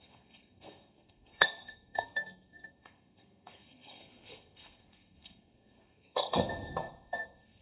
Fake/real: fake